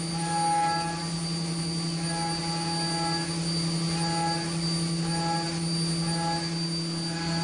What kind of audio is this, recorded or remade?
recorded